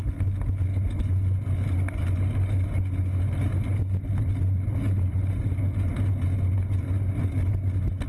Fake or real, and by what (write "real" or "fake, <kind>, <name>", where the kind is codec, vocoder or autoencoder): real